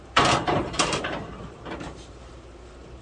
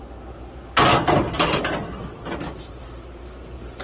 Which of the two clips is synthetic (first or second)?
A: first